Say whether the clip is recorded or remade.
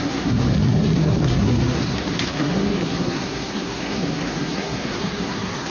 remade